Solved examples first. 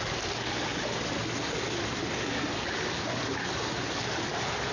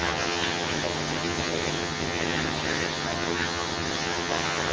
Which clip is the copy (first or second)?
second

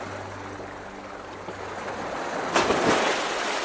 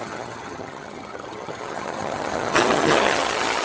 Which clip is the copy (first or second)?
second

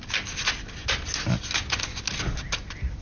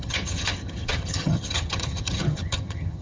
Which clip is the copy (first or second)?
second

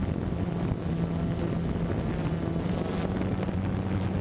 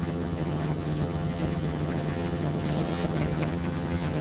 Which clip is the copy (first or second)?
second